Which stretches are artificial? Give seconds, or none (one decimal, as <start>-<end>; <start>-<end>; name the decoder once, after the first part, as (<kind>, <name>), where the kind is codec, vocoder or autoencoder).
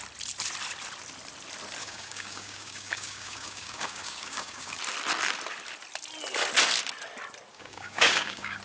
1.8-4.8 (codec, DAC); 7.5-8.6